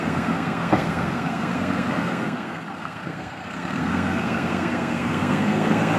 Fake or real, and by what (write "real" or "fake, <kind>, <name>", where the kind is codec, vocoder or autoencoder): fake, codec, SNAC